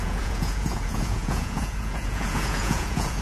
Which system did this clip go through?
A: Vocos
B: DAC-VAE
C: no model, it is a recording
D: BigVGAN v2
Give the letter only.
A